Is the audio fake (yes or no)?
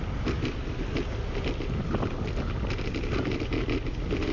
no